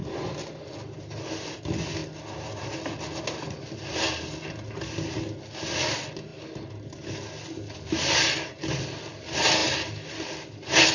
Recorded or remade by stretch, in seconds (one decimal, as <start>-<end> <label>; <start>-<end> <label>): 0.0-0.7 remade; 0.7-10.9 recorded